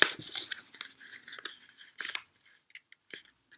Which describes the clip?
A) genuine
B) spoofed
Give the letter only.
A